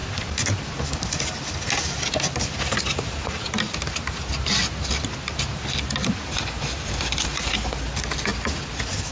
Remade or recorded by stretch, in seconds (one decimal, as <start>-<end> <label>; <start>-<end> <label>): 0.0-9.1 recorded